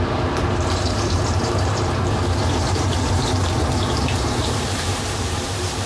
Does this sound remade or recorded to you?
remade